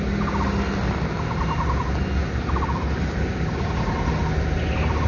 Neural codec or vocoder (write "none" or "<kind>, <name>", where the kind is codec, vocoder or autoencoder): none